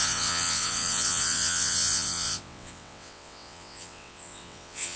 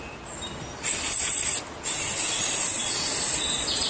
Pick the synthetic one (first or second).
first